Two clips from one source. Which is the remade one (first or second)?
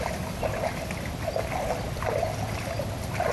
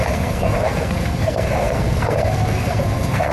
second